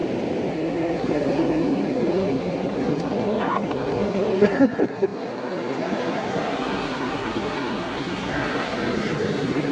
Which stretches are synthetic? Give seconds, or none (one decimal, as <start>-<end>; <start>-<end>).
0.5-9.7